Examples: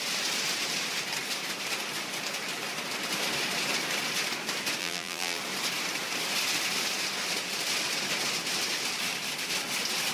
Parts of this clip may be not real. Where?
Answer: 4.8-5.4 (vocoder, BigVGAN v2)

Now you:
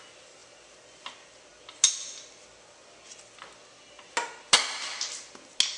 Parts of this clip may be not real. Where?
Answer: none

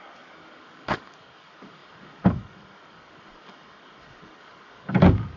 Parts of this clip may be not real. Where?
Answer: 0.0-5.4 (codec, DAC)

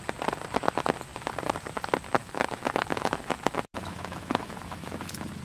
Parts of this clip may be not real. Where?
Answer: 2.2-5.4 (autoencoder, DAC-VAE)

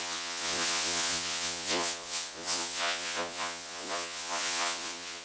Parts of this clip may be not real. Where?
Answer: 0.0-5.2 (vocoder, Vocos)

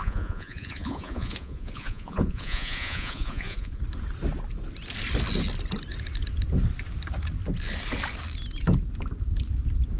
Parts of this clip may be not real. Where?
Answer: 0.0-3.8 (vocoder, Vocos)

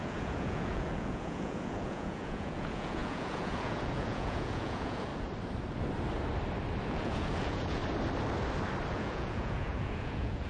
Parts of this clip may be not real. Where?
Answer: 0.0-5.1 (vocoder, Vocos); 6.8-7.8; 8.9-10.5